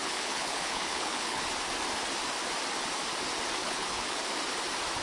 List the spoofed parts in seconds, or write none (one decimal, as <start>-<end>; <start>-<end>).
0.0-1.4; 3.6-4.2